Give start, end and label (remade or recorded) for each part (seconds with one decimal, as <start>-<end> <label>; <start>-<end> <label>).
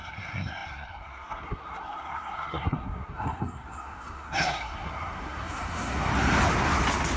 0.0-6.1 remade; 6.1-7.2 recorded